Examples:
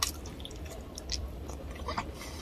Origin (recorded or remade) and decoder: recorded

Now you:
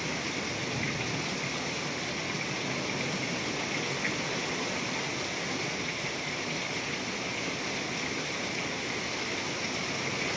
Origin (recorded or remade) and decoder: recorded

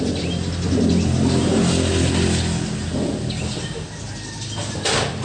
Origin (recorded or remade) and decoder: recorded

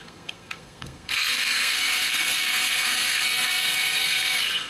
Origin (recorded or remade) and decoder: remade, codec, SNAC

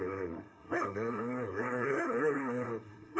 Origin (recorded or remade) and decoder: remade, codec, SNAC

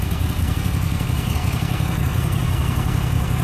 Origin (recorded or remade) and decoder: remade, codec, SNAC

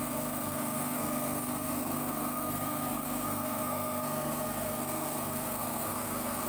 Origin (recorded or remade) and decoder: remade, codec, SNAC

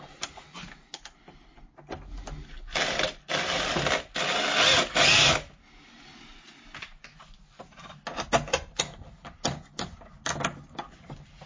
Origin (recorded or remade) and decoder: recorded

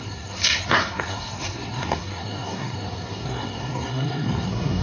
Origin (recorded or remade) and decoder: remade, codec, SNAC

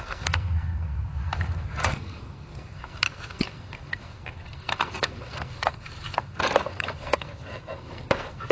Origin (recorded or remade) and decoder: remade, codec, SNAC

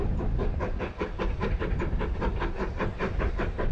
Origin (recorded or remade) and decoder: recorded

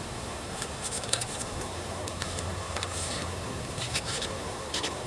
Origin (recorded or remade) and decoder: remade, codec, SNAC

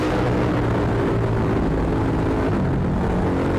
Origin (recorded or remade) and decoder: recorded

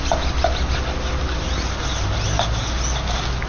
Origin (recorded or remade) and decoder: recorded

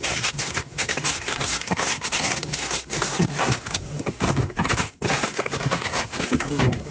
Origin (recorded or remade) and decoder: remade, codec, SNAC